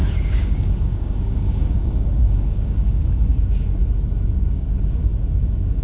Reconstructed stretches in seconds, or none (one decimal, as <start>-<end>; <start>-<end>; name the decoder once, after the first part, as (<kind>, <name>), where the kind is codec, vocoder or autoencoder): 0.0-3.8 (codec, DAC); 4.5-5.8